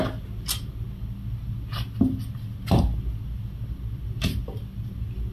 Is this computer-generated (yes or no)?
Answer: no